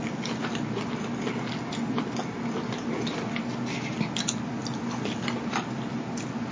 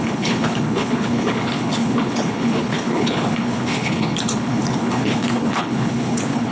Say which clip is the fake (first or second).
second